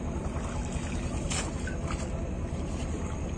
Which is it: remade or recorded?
recorded